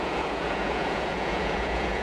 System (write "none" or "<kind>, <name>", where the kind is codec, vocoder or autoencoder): vocoder, Vocos